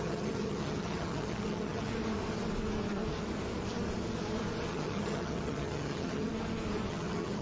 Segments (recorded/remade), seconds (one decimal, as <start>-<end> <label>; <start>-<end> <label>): 0.0-1.9 remade; 1.9-4.7 recorded; 4.7-6.3 remade; 6.3-6.9 recorded; 6.9-7.4 remade